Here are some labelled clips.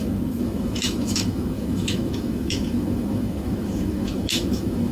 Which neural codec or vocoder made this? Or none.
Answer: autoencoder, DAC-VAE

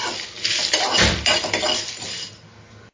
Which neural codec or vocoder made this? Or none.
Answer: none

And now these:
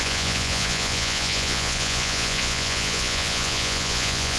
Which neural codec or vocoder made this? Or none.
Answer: vocoder, Vocos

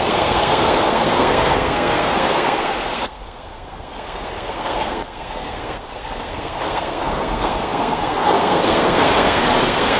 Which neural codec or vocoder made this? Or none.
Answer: codec, SNAC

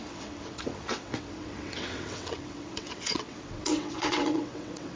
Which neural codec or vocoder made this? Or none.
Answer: vocoder, WaveNeXt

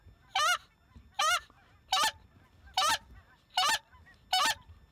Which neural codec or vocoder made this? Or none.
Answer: none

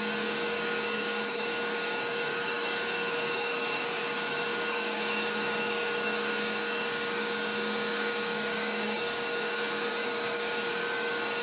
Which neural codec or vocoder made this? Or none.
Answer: codec, DAC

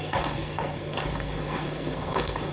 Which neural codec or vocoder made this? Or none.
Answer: codec, SNAC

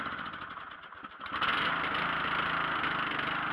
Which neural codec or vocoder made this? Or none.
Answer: none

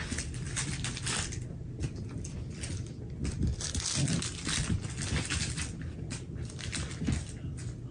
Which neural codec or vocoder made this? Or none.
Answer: none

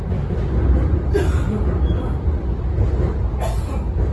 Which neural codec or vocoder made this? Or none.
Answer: none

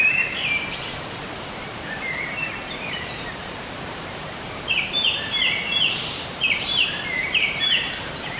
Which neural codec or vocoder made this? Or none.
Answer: vocoder, BigVGAN v2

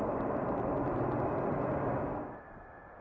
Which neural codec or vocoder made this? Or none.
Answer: none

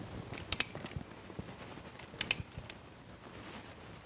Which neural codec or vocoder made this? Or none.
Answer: none